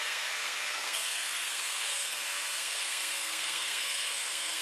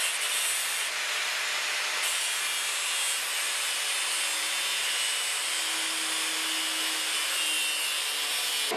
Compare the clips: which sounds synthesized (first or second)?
first